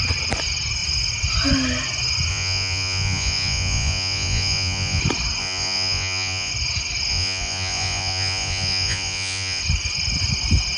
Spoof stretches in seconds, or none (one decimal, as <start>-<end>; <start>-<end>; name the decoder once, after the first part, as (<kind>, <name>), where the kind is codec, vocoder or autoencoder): 2.3-5.0 (vocoder, Vocos); 5.4-6.5; 7.1-9.6